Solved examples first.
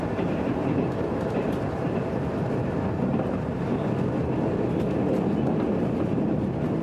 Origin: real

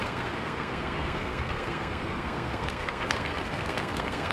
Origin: fake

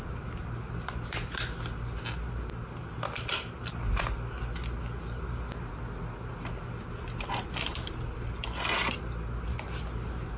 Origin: real